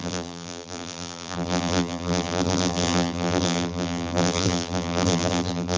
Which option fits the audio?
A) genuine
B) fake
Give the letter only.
B